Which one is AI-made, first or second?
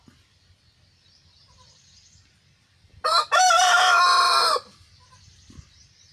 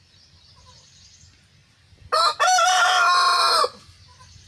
first